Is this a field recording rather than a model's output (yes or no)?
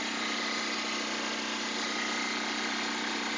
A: yes